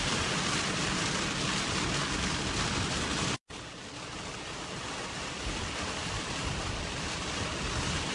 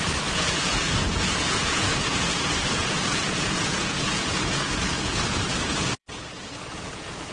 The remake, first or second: second